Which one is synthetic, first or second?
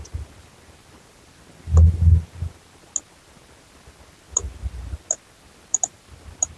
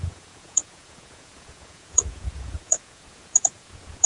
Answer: second